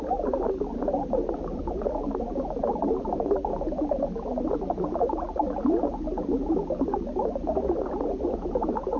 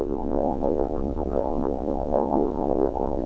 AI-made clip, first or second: second